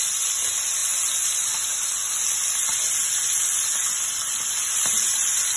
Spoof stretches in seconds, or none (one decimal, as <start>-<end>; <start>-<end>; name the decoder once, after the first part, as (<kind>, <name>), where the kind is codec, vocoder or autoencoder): none